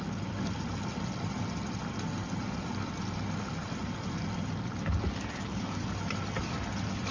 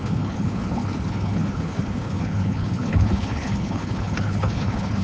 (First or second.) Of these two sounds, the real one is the first